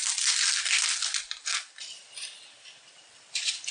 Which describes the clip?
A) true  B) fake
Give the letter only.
A